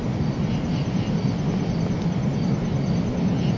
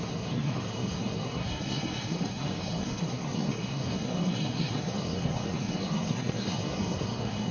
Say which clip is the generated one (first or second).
second